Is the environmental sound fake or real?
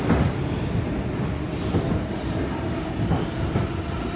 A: real